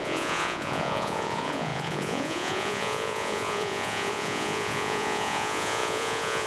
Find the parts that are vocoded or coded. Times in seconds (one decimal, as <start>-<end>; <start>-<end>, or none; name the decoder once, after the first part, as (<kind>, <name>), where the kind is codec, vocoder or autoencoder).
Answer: 0.0-6.5 (vocoder, Vocos)